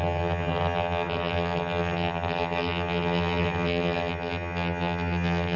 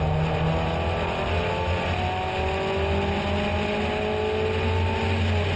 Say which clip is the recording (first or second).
second